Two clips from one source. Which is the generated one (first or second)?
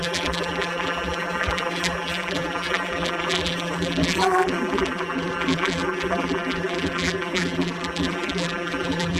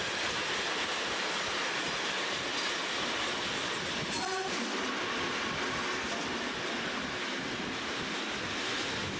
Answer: first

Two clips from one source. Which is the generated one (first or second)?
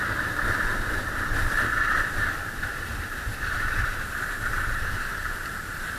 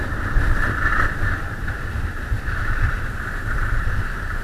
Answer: second